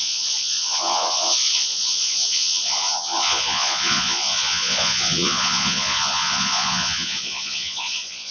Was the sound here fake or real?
fake